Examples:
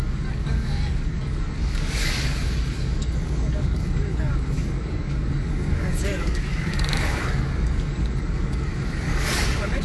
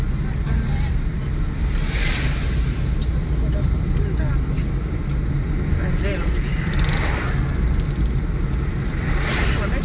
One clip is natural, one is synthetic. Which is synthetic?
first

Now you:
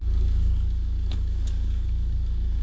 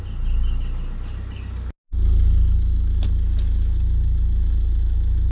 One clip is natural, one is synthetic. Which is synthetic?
first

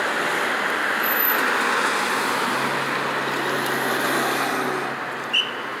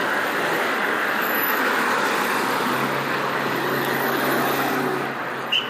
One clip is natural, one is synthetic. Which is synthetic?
second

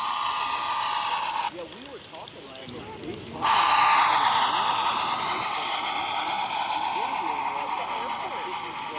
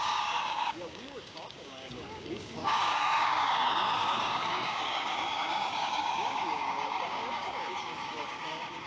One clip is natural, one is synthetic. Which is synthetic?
second